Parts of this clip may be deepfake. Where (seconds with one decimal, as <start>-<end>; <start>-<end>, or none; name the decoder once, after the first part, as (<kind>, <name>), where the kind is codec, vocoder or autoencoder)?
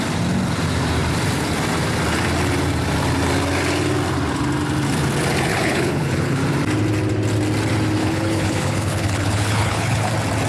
5.5-6.4 (codec, HILCodec); 8.0-10.1